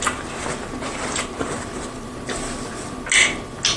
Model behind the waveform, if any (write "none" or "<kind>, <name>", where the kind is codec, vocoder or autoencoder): none